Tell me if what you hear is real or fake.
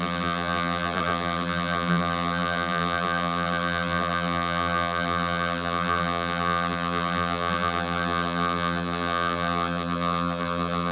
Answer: fake